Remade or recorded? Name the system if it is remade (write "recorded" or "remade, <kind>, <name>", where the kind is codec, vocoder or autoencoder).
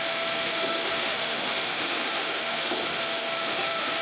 remade, autoencoder, DAC-VAE